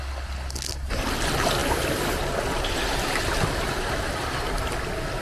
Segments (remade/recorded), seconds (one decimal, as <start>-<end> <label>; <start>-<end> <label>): 0.0-5.2 recorded